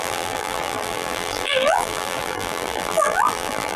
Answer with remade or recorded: remade